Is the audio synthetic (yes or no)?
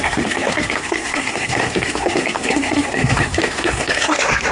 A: yes